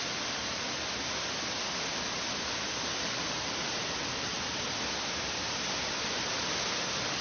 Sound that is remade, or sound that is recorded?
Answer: recorded